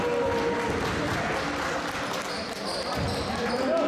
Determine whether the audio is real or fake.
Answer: real